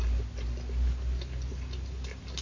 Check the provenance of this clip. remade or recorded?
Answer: recorded